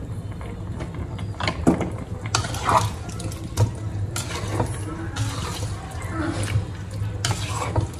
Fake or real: real